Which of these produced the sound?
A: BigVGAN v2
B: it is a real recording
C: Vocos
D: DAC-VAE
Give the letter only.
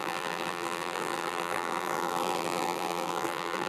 A